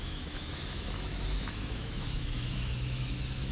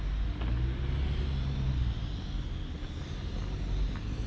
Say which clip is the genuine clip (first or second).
second